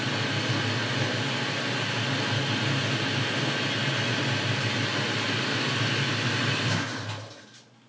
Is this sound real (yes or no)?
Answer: yes